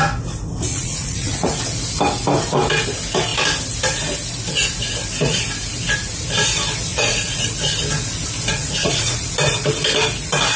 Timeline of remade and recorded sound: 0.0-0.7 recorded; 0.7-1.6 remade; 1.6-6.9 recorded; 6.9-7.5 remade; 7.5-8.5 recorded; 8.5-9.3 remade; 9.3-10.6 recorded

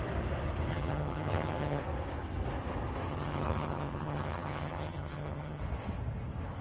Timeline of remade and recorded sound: 0.0-0.7 recorded; 0.7-1.8 remade; 1.8-3.1 recorded; 3.1-5.6 remade; 5.6-6.6 recorded